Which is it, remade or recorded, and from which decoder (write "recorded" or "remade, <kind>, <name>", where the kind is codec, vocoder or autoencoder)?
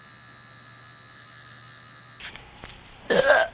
recorded